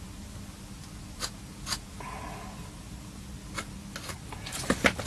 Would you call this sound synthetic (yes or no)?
no